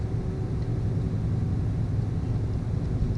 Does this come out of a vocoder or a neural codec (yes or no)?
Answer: no